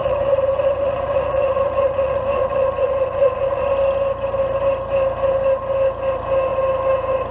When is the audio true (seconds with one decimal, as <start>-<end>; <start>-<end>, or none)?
3.7-7.3